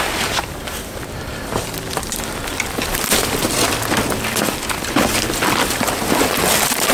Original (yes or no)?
no